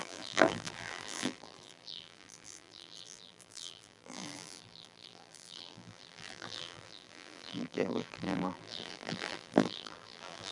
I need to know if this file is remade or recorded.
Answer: remade